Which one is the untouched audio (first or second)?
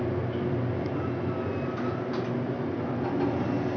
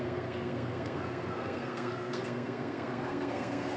first